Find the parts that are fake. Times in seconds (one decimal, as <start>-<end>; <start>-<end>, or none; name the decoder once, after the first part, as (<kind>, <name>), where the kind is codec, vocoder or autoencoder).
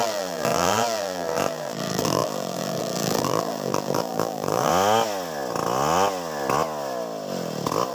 0.0-4.7 (vocoder, BigVGAN v2)